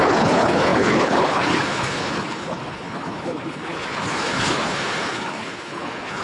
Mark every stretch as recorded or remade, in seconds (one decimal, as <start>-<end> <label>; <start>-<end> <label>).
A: 0.0-6.2 remade